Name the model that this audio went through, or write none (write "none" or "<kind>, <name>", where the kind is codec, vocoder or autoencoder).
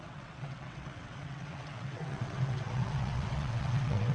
vocoder, WaveNeXt